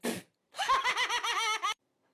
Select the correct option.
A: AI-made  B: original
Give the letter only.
B